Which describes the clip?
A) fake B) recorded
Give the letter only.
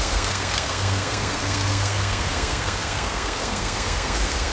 A